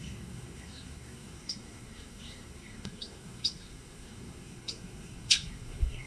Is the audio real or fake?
fake